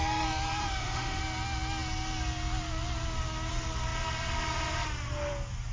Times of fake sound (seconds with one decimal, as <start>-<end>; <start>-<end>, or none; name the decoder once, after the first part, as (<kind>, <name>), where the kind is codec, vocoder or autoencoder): 0.6-1.2 (autoencoder, DAC-VAE)